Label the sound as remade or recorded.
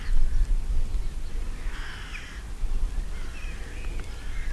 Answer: recorded